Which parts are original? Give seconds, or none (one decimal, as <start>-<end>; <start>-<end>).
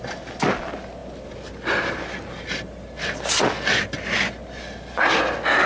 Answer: 0.0-5.7